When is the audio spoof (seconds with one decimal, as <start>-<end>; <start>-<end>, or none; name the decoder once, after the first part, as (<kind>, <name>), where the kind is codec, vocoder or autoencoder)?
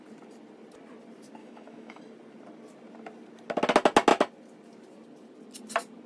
1.4-2.0 (autoencoder, DAC-VAE)